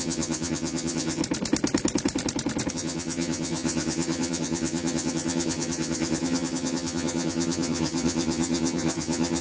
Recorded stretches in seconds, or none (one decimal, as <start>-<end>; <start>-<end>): 1.2-2.7